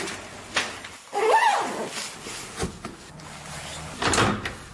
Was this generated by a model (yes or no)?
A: no